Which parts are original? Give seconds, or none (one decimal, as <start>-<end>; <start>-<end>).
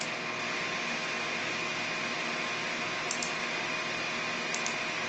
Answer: 0.0-5.1